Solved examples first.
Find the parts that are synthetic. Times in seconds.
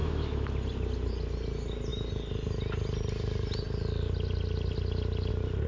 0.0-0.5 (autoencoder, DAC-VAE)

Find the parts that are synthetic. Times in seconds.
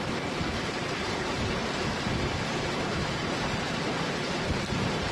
none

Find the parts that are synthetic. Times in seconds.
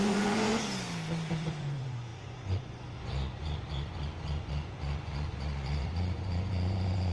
0.0-0.5 (vocoder, Vocos); 1.3-7.1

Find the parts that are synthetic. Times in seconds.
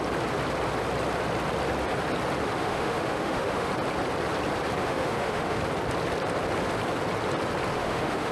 2.6-3.7 (autoencoder, DAC-VAE); 4.8-5.6; 7.7-8.3